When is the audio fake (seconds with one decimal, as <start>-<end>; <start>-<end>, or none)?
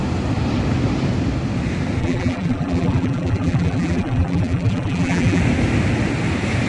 2.0-5.4